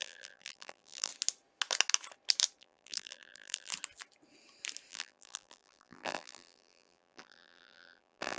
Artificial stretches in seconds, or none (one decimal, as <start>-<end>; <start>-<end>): 0.0-1.1; 2.6-3.7; 4.9-8.4